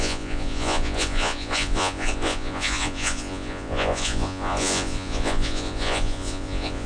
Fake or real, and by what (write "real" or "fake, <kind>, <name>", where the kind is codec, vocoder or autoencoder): fake, vocoder, Vocos